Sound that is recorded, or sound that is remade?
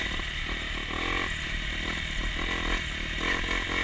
recorded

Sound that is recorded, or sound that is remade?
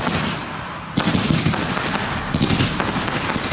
recorded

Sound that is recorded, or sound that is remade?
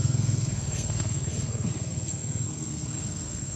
remade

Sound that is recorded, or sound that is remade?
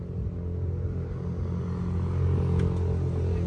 recorded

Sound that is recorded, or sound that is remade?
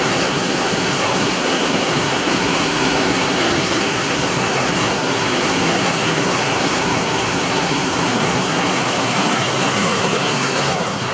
remade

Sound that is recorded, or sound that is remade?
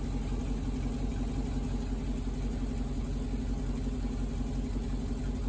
recorded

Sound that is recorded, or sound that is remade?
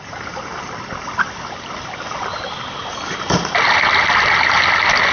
recorded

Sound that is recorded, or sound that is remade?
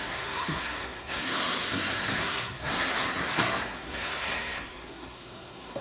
remade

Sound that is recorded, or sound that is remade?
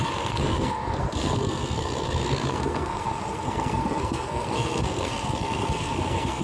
remade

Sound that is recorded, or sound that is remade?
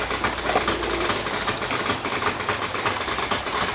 recorded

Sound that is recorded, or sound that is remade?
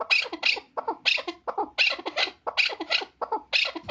recorded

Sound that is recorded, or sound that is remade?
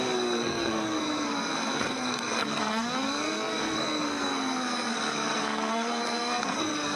remade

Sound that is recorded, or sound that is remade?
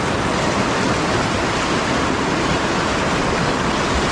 recorded